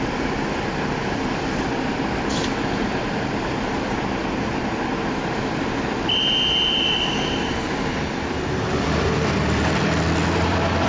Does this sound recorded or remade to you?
remade